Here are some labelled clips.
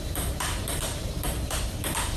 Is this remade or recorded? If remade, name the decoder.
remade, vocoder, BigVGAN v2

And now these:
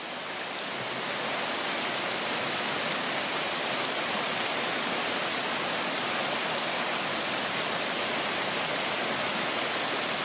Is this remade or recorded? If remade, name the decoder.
recorded